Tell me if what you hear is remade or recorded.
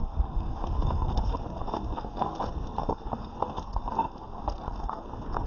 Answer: remade